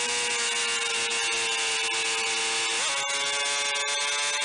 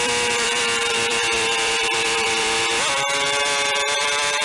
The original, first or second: first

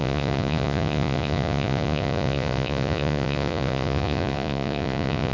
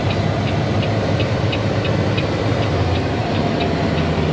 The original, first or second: second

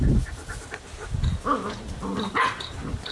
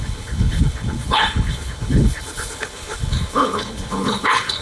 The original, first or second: first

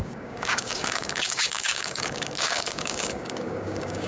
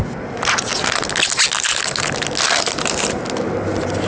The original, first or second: second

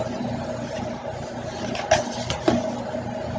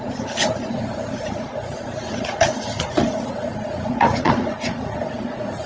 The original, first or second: first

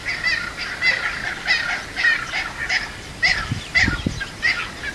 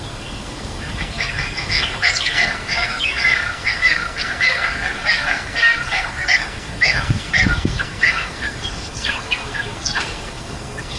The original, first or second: first